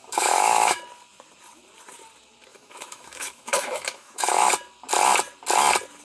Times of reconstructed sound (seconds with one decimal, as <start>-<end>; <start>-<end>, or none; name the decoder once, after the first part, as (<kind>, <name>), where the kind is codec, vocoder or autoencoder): 0.0-0.8 (autoencoder, DAC-VAE); 2.5-4.5